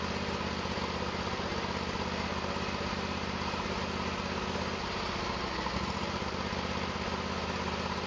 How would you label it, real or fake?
real